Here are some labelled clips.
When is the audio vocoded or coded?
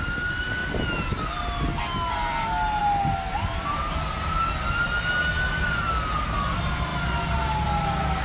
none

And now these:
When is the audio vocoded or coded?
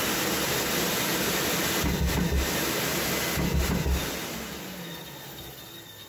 none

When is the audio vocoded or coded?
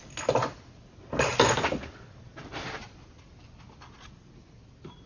1.3-3.1 (vocoder, BigVGAN v2)